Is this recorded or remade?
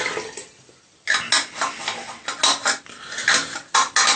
recorded